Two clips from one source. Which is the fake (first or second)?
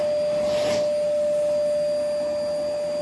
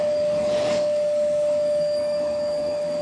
second